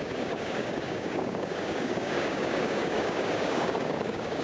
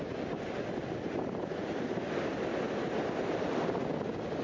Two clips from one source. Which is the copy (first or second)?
first